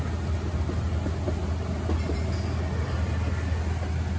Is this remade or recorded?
recorded